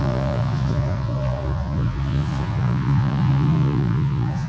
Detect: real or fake fake